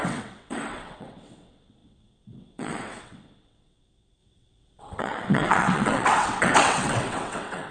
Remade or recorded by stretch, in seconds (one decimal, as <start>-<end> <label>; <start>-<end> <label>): 0.0-7.7 remade